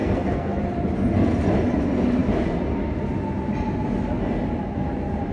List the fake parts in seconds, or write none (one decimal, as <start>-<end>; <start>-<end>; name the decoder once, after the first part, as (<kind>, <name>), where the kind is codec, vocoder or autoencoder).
0.0-0.6 (codec, SNAC)